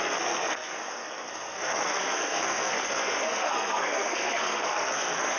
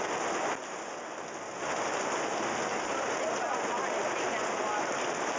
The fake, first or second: first